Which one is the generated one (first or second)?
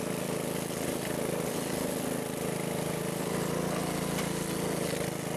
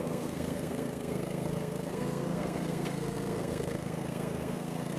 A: second